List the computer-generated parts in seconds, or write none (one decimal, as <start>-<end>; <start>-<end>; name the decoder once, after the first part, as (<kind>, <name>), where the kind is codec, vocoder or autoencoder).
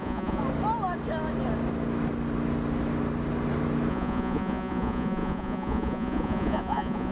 0.0-0.4 (vocoder, Vocos); 3.9-7.1